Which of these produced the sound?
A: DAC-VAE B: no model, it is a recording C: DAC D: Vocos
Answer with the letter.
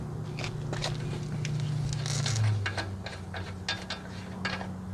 B